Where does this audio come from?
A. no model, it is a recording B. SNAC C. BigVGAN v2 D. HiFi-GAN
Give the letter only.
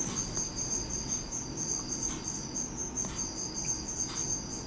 A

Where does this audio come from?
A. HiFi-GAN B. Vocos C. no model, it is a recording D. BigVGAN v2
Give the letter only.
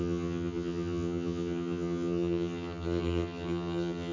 A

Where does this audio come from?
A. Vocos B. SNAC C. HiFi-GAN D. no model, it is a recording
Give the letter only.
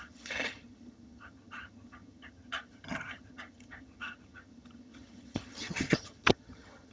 C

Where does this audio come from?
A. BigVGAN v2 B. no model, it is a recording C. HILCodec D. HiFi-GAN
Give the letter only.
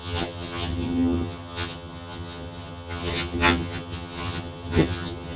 D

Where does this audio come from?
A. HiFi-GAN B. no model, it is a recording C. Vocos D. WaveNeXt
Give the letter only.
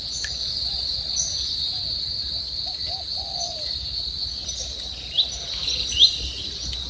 B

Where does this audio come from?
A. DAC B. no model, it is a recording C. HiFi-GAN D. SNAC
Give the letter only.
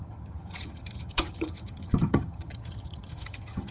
C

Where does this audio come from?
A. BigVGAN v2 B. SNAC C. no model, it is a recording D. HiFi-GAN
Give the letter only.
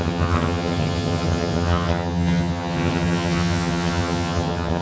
D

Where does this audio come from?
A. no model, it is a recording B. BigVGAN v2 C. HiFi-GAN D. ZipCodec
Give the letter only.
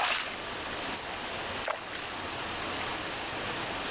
A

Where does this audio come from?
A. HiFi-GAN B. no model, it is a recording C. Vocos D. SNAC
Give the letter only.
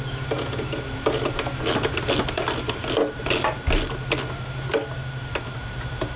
B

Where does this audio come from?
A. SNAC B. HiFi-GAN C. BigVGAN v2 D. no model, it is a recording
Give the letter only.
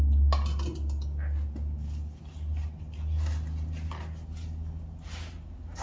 D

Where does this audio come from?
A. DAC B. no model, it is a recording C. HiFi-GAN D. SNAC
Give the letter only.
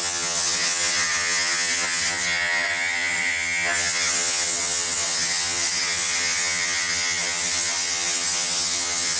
C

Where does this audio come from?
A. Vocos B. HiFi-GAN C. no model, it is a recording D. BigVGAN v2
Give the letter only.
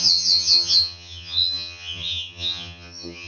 B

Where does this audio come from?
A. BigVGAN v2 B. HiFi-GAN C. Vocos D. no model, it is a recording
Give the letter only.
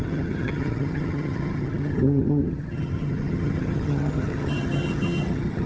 B